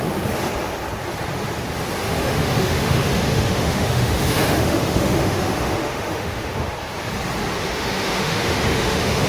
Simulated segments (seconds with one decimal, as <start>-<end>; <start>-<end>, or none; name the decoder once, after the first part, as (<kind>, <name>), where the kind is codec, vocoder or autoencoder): 2.0-6.7 (autoencoder, DAC-VAE); 7.6-9.3